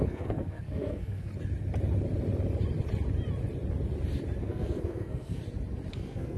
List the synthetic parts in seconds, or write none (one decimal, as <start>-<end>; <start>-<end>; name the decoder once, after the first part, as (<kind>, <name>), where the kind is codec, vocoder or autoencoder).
0.0-1.3 (codec, SNAC); 4.4-5.4; 5.9-6.4